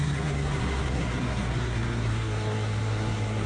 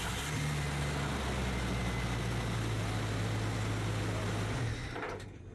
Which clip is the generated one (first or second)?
first